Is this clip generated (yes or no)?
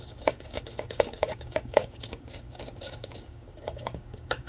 yes